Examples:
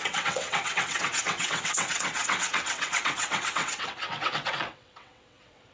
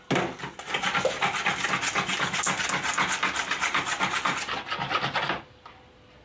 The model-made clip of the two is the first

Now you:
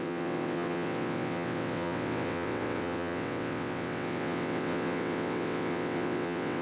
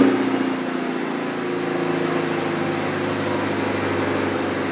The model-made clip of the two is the first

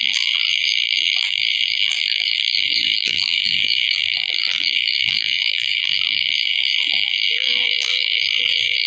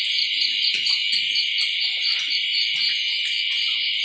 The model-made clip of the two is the first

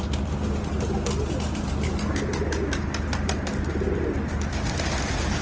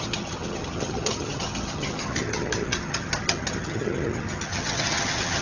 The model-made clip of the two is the second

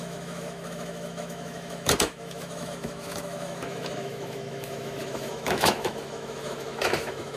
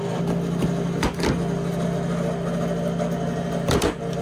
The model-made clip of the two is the first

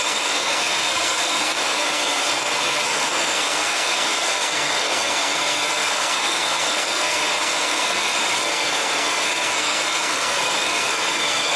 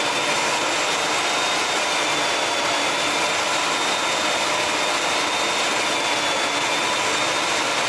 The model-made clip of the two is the first